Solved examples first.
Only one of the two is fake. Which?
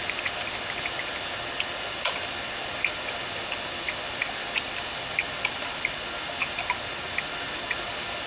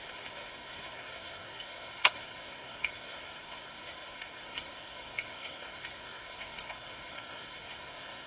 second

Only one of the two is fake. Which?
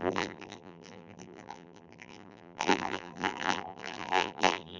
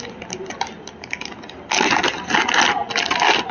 first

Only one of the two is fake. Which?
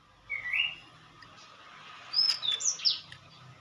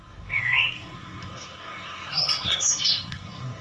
second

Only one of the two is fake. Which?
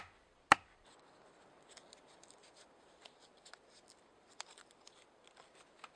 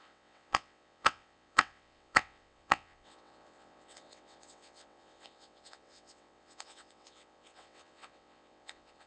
second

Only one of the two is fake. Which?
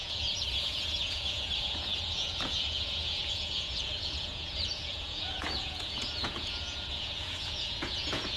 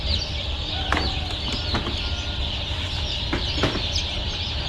first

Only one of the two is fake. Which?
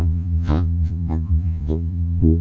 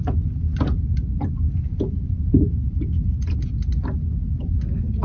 first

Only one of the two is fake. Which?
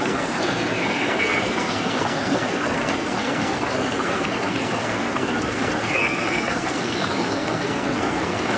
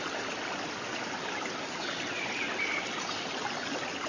first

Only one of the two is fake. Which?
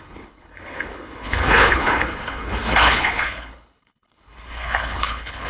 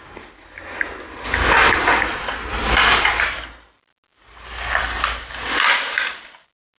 first